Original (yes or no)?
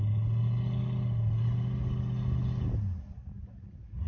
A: yes